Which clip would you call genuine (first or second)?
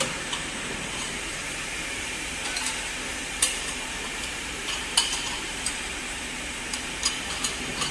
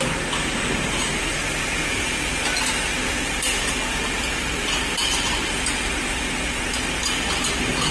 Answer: second